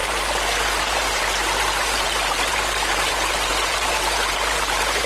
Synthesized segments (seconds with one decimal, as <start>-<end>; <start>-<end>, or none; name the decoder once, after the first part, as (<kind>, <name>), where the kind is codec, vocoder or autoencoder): 0.0-3.1 (vocoder, BigVGAN v2); 3.5-5.1